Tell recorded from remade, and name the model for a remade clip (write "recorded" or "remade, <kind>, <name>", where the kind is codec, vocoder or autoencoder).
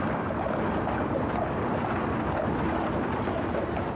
recorded